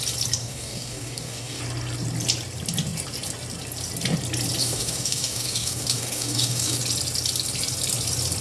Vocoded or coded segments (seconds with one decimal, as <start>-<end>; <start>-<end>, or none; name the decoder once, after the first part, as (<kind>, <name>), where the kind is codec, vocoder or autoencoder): 0.4-1.6 (codec, DAC); 4.6-6.8